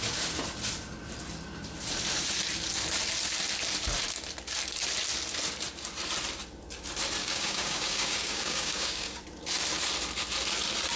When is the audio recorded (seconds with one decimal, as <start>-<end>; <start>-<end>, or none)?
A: 0.0-7.2; 9.2-11.0